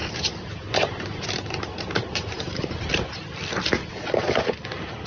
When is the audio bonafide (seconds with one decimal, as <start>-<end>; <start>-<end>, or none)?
3.1-3.8; 4.4-5.1